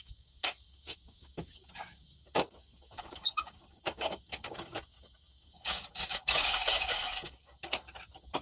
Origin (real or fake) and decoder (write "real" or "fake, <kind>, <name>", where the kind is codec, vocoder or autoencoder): fake, codec, DAC